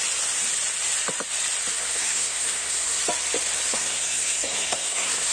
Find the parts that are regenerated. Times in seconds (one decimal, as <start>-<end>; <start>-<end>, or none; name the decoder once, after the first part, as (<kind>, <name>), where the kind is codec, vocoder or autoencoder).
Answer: 1.7-3.0 (codec, SNAC); 3.7-5.3